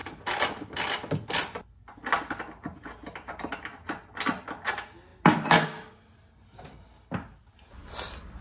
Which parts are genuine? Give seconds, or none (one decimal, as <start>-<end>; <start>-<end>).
0.0-8.4